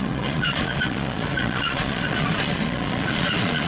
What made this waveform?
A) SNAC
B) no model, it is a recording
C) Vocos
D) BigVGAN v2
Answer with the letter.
C